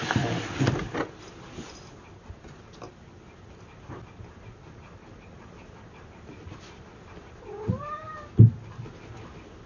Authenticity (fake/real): real